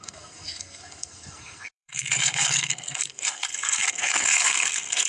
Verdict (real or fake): fake